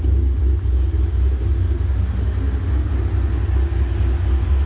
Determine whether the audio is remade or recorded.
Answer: recorded